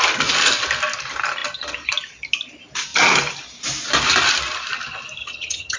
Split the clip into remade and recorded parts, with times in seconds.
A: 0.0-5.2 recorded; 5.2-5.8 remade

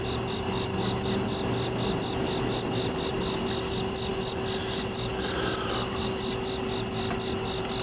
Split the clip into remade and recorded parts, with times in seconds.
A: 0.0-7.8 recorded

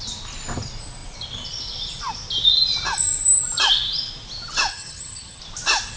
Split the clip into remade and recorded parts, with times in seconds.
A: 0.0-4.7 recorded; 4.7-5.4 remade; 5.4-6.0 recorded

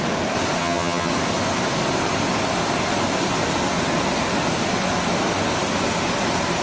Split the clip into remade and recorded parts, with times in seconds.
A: 0.0-0.6 recorded; 0.6-1.1 remade; 1.1-6.6 recorded